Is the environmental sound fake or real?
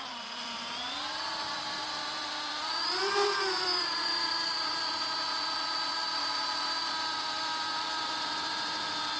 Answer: fake